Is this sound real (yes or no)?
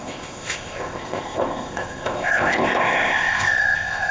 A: no